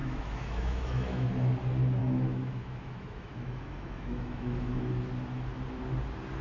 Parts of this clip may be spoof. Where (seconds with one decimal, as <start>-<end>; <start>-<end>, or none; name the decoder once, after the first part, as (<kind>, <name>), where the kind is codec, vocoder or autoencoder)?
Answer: 0.0-1.3 (autoencoder, DAC-VAE); 2.0-4.8